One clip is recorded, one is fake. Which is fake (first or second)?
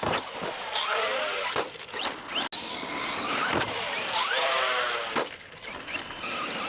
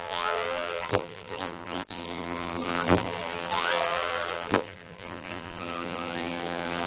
second